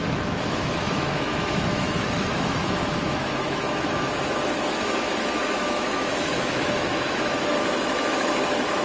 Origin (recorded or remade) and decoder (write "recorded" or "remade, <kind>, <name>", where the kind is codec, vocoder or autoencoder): remade, autoencoder, DAC-VAE